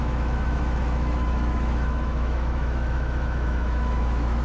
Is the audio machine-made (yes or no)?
yes